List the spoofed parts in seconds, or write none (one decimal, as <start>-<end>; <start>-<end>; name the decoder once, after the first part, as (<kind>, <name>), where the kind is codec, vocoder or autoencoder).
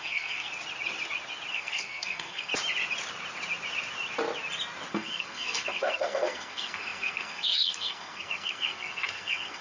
0.0-0.5 (codec, SNAC); 1.5-2.5; 4.9-9.6